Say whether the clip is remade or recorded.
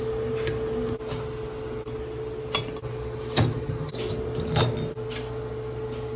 recorded